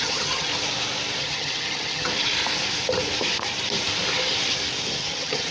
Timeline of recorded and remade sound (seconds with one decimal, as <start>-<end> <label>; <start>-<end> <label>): 0.0-0.5 remade; 0.5-1.2 recorded; 1.2-2.1 remade; 2.1-5.0 recorded; 5.0-5.5 remade